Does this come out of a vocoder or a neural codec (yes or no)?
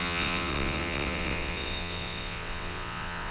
yes